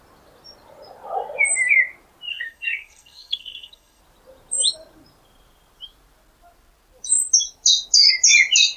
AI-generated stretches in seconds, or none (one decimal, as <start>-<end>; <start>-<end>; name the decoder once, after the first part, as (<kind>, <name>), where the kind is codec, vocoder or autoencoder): 2.3-4.0 (codec, SNAC)